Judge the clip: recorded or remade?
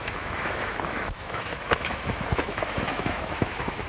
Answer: remade